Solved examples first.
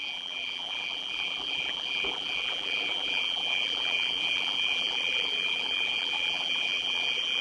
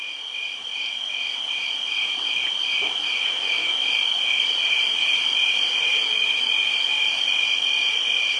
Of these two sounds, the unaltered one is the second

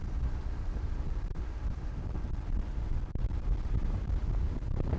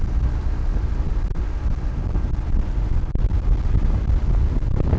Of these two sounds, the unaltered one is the second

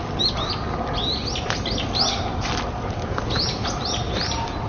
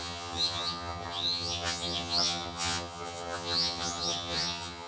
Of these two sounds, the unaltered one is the first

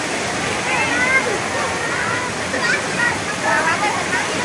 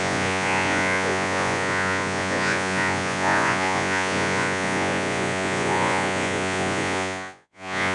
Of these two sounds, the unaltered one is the first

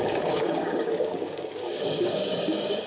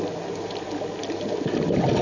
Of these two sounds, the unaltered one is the second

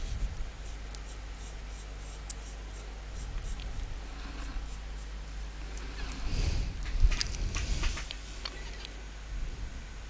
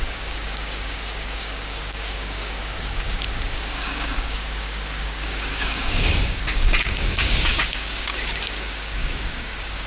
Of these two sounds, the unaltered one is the first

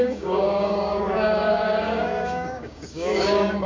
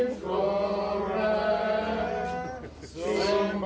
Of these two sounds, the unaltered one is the second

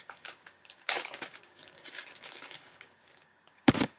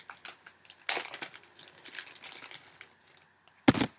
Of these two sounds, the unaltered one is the second